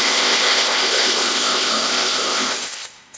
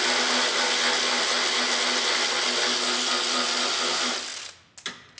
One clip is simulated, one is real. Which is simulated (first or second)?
first